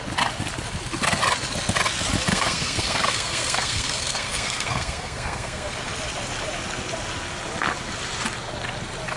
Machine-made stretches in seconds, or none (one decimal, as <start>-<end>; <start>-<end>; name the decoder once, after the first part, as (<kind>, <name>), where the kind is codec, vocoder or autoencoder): 2.3-5.7 (codec, SNAC)